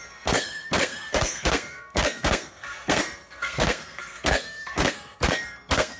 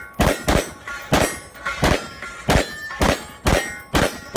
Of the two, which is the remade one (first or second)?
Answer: first